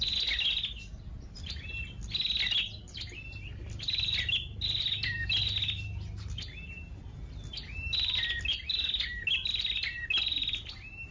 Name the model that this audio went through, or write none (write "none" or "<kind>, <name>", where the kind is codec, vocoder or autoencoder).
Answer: none